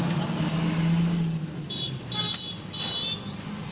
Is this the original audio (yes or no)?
yes